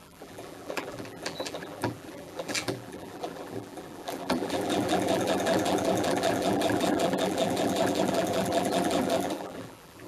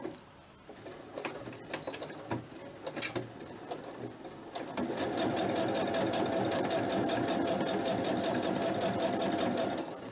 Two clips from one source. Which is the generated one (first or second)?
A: first